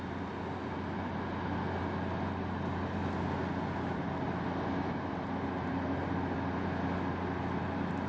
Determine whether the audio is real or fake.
real